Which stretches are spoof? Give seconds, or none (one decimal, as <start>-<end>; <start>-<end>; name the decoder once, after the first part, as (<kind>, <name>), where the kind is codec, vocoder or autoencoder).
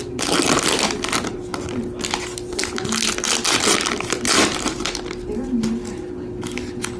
none